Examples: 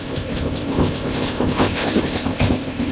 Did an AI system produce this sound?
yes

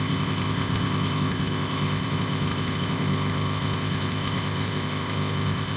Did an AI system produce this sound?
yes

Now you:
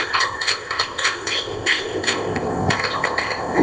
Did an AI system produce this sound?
yes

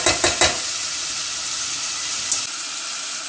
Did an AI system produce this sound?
no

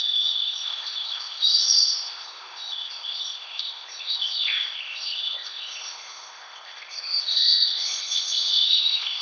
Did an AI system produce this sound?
yes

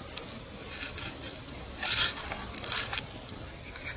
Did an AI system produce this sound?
no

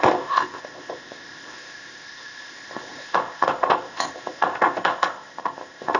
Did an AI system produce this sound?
yes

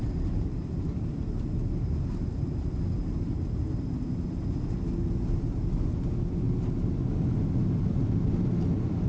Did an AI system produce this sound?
no